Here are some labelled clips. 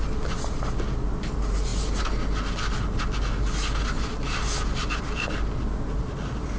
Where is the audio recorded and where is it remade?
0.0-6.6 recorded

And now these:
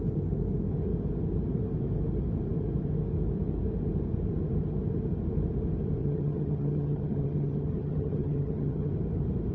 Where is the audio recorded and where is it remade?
0.0-6.0 recorded; 6.0-8.9 remade; 8.9-9.5 recorded

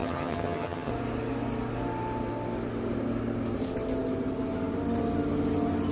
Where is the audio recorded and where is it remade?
0.0-0.9 remade; 0.9-5.9 recorded

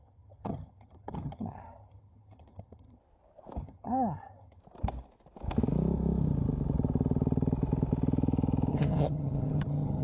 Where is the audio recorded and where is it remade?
0.0-3.0 remade; 3.0-3.6 recorded; 3.6-4.6 remade; 4.6-8.7 recorded; 8.7-10.0 remade

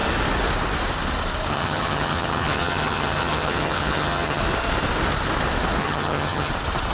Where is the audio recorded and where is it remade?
0.0-1.5 recorded; 1.5-4.4 remade; 4.4-5.8 recorded; 5.8-6.5 remade; 6.5-6.9 recorded